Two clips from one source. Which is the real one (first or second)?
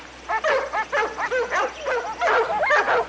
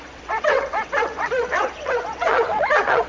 first